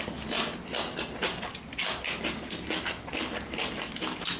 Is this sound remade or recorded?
recorded